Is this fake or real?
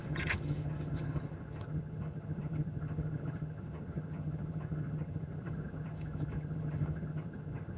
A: fake